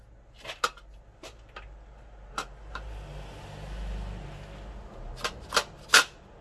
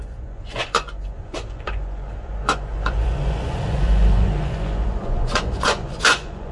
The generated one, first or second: second